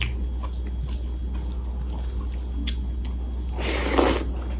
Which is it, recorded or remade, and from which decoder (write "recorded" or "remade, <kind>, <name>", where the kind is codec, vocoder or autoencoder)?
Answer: recorded